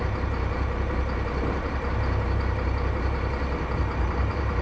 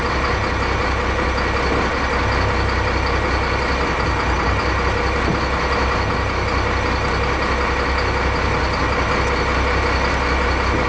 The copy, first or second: first